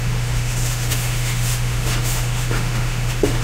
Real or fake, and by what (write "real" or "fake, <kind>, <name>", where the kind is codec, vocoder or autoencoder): fake, autoencoder, DAC-VAE